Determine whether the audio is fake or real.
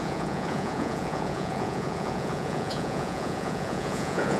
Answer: fake